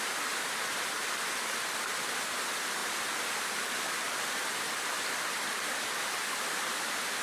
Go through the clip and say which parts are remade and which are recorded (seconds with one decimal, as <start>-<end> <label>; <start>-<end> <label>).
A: 0.0-7.2 recorded